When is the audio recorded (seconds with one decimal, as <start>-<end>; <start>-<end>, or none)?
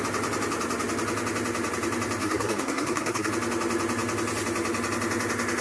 0.0-2.2; 3.3-5.6